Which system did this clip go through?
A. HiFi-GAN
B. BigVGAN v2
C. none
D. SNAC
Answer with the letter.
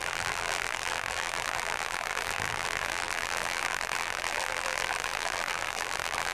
B